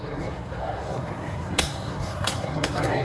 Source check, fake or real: fake